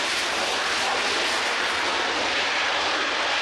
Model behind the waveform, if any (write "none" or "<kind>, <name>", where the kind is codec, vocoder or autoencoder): none